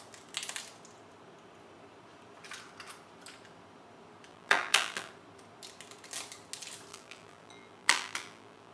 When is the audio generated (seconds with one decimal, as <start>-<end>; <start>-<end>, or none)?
4.3-5.1; 6.9-8.7